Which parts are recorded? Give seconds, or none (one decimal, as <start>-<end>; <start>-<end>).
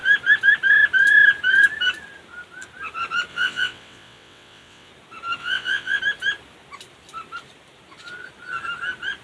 0.0-3.3; 4.9-5.4; 6.0-9.2